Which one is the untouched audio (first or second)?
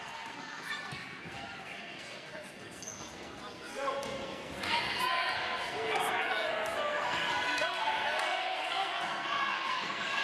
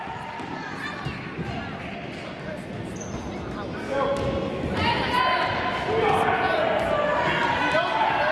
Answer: second